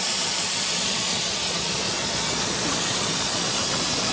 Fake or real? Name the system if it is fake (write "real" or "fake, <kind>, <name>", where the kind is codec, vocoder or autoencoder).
fake, vocoder, Vocos